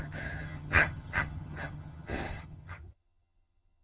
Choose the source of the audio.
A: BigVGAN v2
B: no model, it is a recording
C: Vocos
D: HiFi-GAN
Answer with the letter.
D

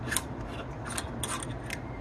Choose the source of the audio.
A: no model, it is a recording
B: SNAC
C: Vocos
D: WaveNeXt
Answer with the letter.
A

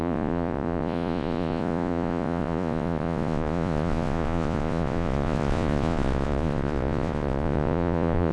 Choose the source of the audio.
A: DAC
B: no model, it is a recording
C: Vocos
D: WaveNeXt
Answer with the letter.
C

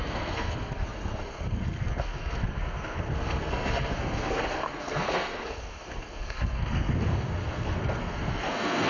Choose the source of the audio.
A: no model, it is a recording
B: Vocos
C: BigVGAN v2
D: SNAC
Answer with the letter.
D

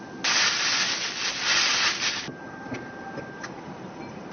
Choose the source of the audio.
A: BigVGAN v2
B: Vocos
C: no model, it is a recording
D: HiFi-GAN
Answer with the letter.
C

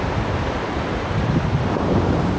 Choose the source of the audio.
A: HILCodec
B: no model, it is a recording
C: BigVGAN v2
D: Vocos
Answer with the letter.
C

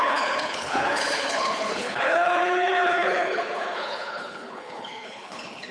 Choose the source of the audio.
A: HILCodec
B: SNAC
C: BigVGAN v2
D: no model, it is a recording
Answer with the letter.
A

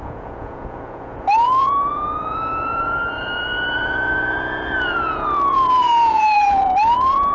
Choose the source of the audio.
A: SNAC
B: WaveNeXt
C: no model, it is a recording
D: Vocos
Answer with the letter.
D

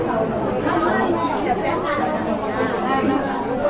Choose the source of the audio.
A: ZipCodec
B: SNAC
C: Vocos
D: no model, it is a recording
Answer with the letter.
D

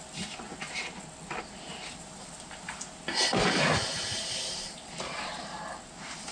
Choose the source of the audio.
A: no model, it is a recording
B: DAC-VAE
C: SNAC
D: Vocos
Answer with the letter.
A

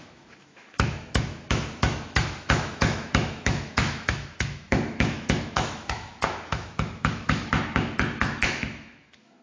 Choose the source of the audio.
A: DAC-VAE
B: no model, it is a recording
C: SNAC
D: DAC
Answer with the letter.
A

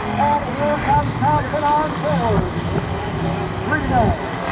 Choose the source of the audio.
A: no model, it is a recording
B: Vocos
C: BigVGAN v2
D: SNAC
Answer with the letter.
A